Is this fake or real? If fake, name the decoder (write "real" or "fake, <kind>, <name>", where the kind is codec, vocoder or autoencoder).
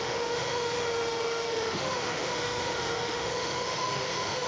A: fake, autoencoder, DAC-VAE